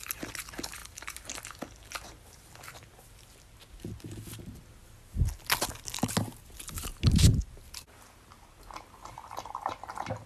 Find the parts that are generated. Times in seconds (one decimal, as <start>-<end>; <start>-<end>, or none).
none